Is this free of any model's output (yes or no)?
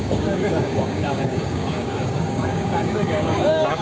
no